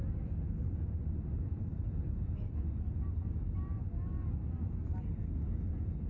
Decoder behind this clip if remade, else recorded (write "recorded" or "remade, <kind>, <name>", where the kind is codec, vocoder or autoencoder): recorded